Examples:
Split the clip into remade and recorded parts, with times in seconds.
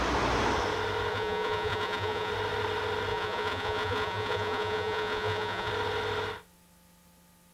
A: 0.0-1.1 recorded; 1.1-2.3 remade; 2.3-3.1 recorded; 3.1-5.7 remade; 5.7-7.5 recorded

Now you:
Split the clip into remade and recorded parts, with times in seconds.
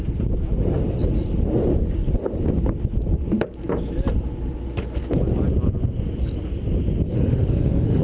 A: 0.0-7.1 recorded; 7.1-8.0 remade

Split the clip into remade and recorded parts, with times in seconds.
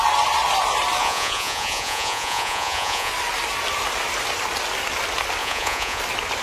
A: 0.0-1.0 recorded; 1.0-3.1 remade; 3.1-5.4 recorded; 5.4-6.0 remade; 6.0-6.4 recorded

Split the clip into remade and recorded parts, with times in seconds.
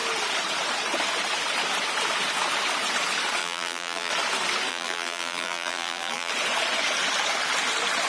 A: 0.0-3.4 recorded; 3.4-4.1 remade; 4.1-4.7 recorded; 4.7-6.3 remade; 6.3-8.1 recorded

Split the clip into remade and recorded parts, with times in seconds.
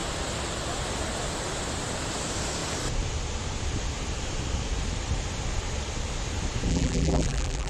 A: 0.0-6.7 recorded; 6.7-7.7 remade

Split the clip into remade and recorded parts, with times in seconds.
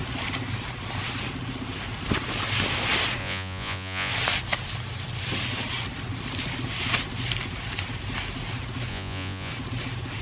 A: 0.0-3.2 recorded; 3.2-4.1 remade; 4.1-8.9 recorded; 8.9-9.5 remade; 9.5-10.2 recorded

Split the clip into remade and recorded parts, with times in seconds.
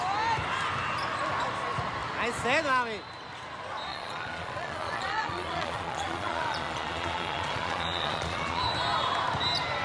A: 0.0-3.9 recorded; 3.9-8.6 remade; 8.6-9.8 recorded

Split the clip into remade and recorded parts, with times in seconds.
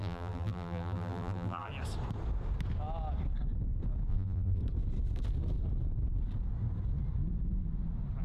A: 0.0-1.7 remade; 1.7-4.1 recorded; 4.1-4.6 remade; 4.6-8.2 recorded